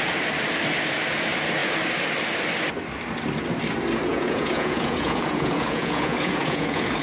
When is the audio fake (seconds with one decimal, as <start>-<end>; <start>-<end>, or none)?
4.1-7.0